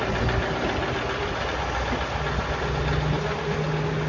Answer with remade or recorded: recorded